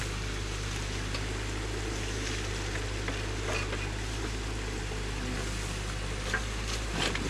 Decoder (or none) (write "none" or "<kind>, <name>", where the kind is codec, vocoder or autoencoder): none